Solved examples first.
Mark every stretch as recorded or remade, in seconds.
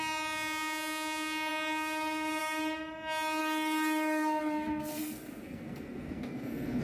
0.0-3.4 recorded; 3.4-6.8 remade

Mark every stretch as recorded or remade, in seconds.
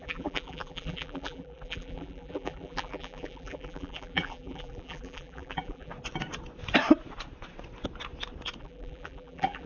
0.0-5.9 remade; 5.9-8.6 recorded; 8.6-9.7 remade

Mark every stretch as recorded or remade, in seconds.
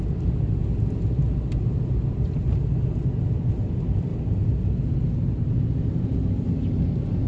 0.0-7.3 recorded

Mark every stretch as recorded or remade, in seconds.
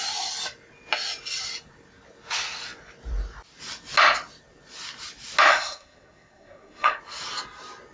0.0-5.5 recorded; 5.5-7.0 remade; 7.0-7.9 recorded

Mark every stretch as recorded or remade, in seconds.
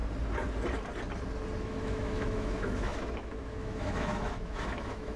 0.0-1.6 recorded; 1.6-5.2 remade